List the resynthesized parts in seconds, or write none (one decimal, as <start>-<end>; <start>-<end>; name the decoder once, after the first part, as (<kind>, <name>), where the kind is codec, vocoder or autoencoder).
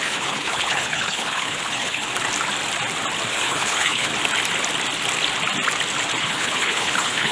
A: 0.0-2.1 (codec, HILCodec); 3.3-4.1; 6.2-7.3